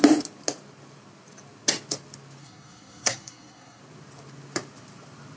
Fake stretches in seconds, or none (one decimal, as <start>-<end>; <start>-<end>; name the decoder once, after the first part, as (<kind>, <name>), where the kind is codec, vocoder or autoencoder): 2.4-3.8 (codec, SNAC)